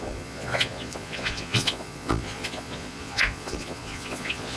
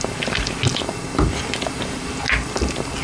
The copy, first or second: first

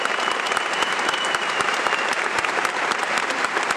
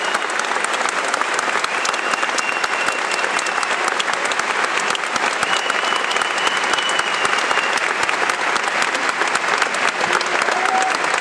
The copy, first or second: first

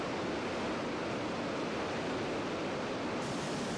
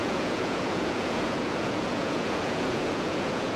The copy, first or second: second